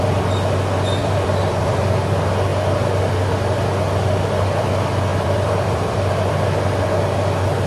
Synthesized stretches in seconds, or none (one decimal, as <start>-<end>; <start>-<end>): 1.0-1.8; 5.1-6.3